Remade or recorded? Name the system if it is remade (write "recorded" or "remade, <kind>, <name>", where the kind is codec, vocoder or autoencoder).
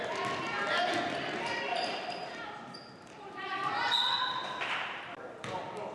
remade, vocoder, BigVGAN v2